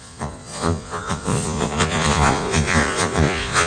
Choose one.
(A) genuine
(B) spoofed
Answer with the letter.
B